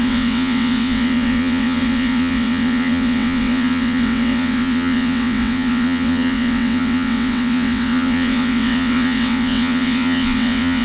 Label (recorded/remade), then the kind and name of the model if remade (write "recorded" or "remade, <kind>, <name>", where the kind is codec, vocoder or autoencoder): remade, vocoder, WaveNeXt